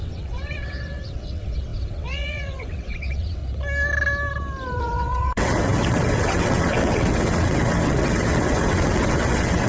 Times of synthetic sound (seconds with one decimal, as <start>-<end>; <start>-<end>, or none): 0.0-3.4; 4.8-9.7